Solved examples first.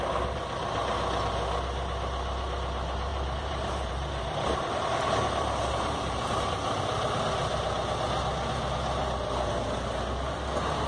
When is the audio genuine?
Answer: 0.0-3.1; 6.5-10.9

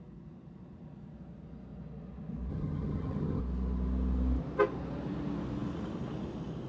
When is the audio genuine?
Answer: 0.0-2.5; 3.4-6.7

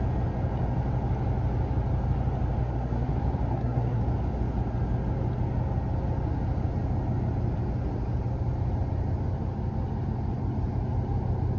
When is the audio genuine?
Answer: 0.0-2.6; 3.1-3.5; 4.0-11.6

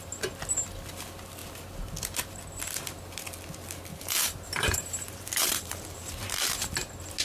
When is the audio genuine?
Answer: 0.0-3.9; 6.1-7.2

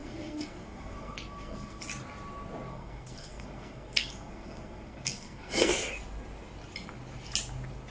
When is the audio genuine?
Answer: 1.8-2.7; 5.7-7.9

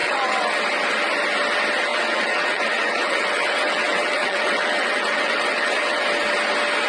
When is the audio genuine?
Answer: 0.6-1.9; 6.0-6.9